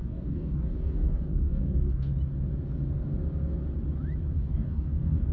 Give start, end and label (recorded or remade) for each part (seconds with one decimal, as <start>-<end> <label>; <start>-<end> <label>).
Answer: 0.0-2.1 remade; 2.1-4.3 recorded; 4.3-5.3 remade